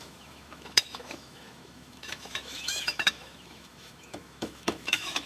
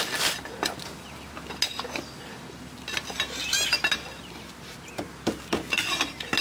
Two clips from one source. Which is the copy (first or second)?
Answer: first